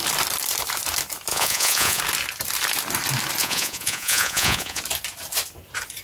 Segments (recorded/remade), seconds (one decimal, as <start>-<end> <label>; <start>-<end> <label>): 0.0-1.3 recorded; 1.3-2.0 remade; 2.0-3.4 recorded; 3.4-4.8 remade; 4.8-6.0 recorded